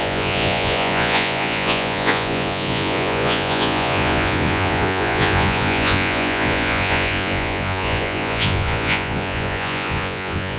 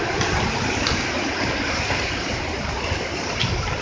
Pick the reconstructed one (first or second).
first